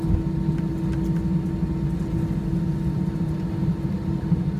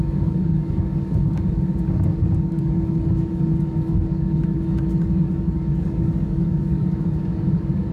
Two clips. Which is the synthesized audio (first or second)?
second